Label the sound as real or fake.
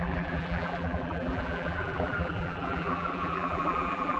fake